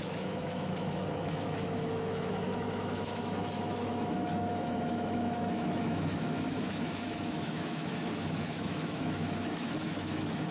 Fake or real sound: fake